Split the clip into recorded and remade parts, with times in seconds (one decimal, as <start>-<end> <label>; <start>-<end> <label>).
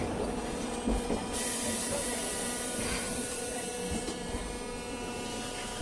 0.0-4.4 remade; 4.4-5.8 recorded